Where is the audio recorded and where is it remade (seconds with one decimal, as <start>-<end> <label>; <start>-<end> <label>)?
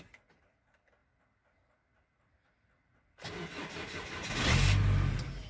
0.0-5.5 recorded